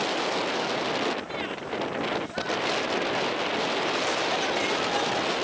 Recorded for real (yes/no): yes